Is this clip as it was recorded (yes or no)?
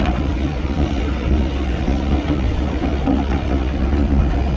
no